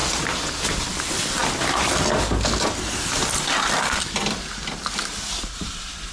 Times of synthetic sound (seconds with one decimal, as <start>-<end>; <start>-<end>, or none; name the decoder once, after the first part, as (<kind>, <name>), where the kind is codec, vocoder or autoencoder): none